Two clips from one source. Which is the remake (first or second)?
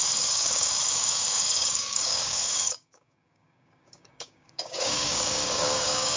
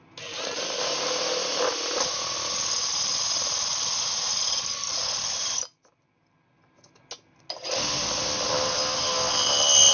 first